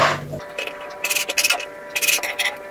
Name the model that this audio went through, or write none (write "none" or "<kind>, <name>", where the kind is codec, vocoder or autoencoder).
none